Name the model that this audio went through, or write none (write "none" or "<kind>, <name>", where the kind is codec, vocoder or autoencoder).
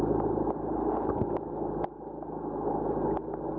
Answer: none